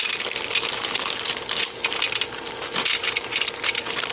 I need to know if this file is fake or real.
real